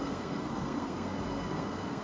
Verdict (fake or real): fake